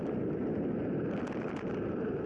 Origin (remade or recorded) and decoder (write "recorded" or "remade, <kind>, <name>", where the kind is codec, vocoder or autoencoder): recorded